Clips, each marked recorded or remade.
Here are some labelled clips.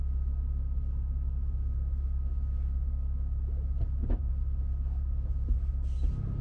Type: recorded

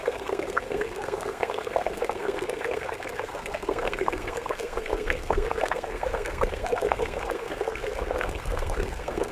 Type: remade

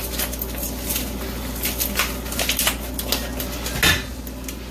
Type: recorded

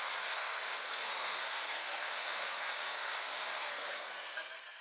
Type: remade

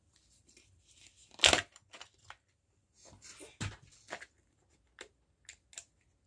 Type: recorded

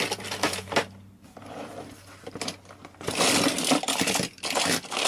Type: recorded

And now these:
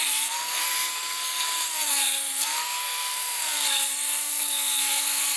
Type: remade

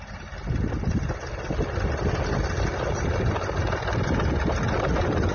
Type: recorded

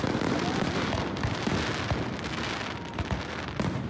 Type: recorded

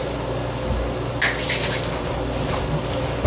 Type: recorded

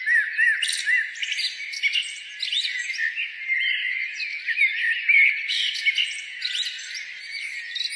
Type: recorded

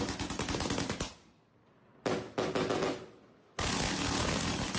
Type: recorded